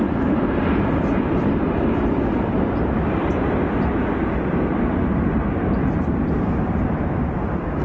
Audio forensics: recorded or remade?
recorded